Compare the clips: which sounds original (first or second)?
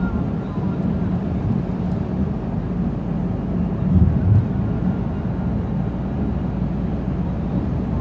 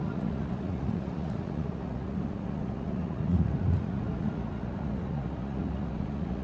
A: first